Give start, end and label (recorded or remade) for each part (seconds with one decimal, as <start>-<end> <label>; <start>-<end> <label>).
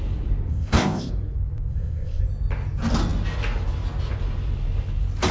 0.0-0.5 recorded; 0.5-1.1 remade; 1.1-1.7 recorded; 1.7-2.2 remade; 2.2-5.3 recorded